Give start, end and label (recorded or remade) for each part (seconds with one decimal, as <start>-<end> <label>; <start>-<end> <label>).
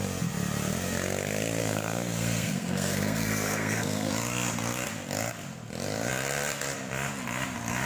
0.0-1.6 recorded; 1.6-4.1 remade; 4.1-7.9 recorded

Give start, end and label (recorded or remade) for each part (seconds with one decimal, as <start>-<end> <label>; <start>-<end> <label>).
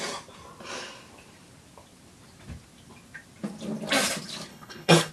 0.0-4.5 recorded; 4.5-5.1 remade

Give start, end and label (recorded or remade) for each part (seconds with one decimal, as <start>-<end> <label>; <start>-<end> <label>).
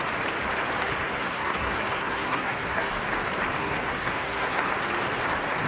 0.0-0.8 recorded; 0.8-2.9 remade; 2.9-3.6 recorded; 3.6-4.7 remade; 4.7-5.7 recorded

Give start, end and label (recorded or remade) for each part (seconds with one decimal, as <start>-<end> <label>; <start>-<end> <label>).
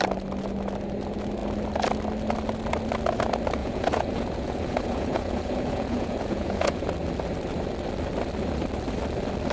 0.0-3.6 recorded; 3.6-6.9 remade; 6.9-9.5 recorded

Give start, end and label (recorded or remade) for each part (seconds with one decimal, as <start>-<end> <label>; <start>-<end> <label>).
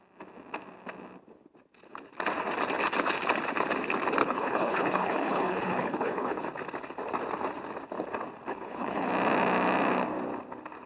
0.0-4.2 recorded; 4.2-6.4 remade; 6.4-8.5 recorded; 8.5-9.1 remade; 9.1-10.9 recorded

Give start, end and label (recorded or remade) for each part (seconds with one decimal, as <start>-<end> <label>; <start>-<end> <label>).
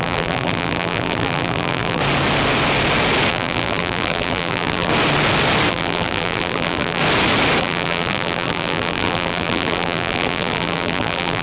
0.0-2.0 remade; 2.0-3.3 recorded; 3.3-4.9 remade; 4.9-5.7 recorded; 5.7-7.0 remade; 7.0-7.6 recorded; 7.6-11.4 remade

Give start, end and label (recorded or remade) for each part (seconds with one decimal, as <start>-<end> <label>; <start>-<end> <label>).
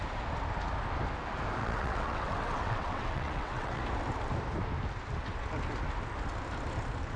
0.0-1.6 recorded; 1.6-3.8 remade; 3.8-7.2 recorded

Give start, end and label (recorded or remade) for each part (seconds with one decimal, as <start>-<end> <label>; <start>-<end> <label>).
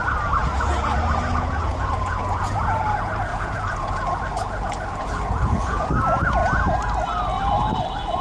0.0-0.4 recorded; 0.4-2.8 remade; 2.8-3.3 recorded; 3.3-4.0 remade; 4.0-5.0 recorded; 5.0-5.9 remade; 5.9-8.2 recorded